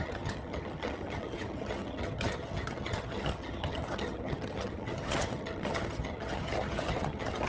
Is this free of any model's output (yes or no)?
no